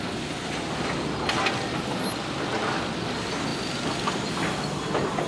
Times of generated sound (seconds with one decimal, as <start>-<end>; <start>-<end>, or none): none

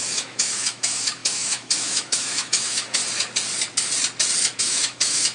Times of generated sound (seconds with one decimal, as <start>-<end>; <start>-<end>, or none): 0.0-3.0; 4.6-5.3

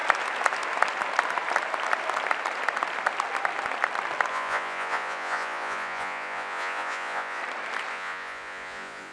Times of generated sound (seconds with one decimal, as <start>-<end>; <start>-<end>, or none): 4.3-7.4; 7.9-9.1

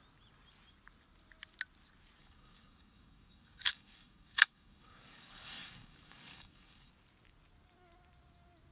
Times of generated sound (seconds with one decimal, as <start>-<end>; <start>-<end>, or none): 2.2-6.9

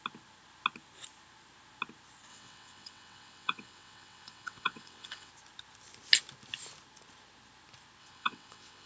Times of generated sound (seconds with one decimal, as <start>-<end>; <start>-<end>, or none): 2.3-5.3; 8.0-8.9

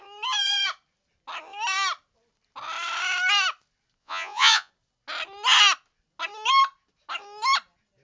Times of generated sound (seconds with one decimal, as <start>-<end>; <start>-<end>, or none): 4.0-4.7